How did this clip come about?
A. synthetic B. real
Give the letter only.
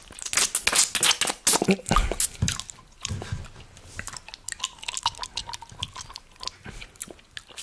B